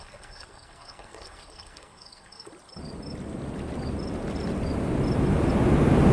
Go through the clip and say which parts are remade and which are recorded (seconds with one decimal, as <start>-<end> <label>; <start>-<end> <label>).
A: 0.0-2.5 remade; 2.5-6.1 recorded